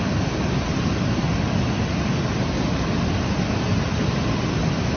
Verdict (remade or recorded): recorded